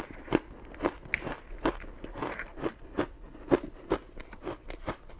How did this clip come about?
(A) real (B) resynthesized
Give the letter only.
A